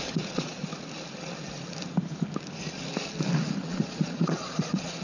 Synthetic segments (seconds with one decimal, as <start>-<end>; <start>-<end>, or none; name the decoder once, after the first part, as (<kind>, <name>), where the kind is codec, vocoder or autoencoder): 0.0-0.6 (vocoder, Vocos); 3.6-5.0